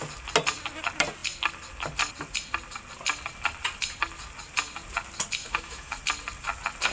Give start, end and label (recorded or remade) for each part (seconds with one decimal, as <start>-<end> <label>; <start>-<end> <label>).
0.0-5.4 recorded; 5.4-6.0 remade; 6.0-6.9 recorded